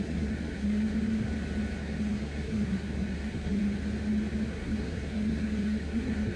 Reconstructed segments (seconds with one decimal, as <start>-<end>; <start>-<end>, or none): 0.0-1.3; 1.8-3.6; 4.5-6.4